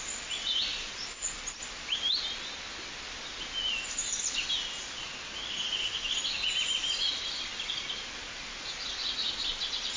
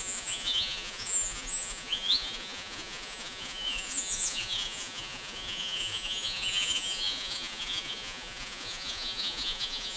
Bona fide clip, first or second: first